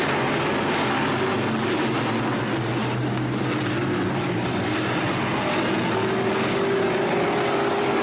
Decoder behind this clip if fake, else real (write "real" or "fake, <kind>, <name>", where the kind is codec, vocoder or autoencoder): real